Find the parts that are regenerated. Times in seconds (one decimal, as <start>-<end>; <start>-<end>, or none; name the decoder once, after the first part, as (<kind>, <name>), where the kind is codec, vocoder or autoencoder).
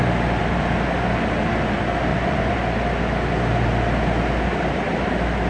2.1-2.6 (vocoder, Vocos)